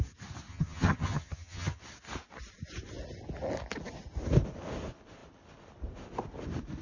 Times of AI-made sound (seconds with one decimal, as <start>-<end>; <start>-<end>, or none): 0.5-1.8